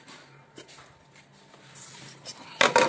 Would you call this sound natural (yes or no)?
yes